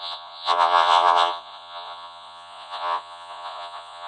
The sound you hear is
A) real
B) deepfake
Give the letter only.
B